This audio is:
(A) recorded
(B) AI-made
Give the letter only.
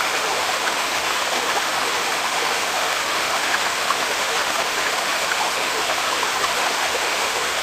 B